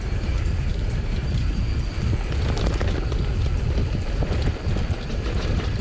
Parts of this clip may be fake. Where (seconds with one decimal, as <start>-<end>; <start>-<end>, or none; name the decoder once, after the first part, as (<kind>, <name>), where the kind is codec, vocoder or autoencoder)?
0.0-1.6 (vocoder, BigVGAN v2); 5.1-5.8